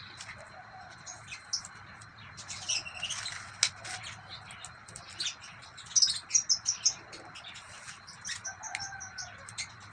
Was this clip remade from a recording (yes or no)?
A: no